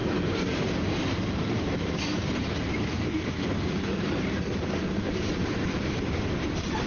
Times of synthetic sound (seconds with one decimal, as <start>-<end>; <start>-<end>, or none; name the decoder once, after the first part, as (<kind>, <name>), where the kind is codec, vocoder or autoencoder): 0.0-6.9 (vocoder, BigVGAN v2)